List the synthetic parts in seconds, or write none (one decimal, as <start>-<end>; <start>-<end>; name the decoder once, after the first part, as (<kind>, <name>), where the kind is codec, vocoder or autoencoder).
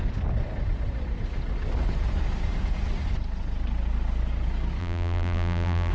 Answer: 4.8-5.9 (vocoder, BigVGAN v2)